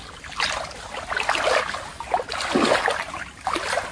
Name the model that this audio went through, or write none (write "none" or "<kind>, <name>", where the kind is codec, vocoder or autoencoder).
none